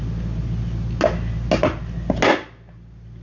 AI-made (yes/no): no